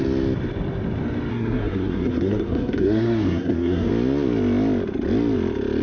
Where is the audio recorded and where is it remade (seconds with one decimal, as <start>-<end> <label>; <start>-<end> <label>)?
0.0-1.3 recorded; 1.3-3.9 remade; 3.9-5.8 recorded